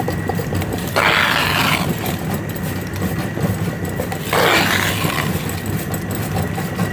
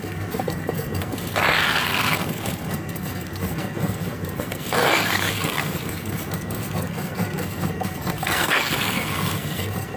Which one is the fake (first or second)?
second